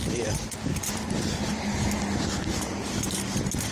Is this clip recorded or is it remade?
recorded